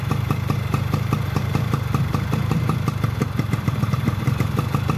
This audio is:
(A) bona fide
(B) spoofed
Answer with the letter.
B